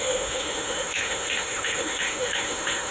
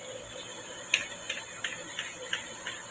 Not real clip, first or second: first